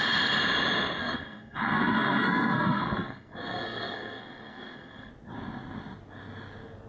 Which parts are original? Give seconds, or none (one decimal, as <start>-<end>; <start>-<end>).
0.0-1.0; 5.1-6.9